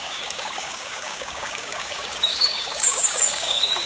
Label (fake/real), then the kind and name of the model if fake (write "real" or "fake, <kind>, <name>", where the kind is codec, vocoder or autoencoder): fake, codec, DAC